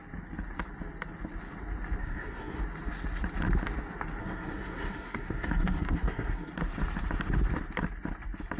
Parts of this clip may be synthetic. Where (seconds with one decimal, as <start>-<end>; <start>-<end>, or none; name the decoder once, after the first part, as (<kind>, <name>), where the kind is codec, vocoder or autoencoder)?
2.0-2.6 (codec, SNAC); 4.2-6.5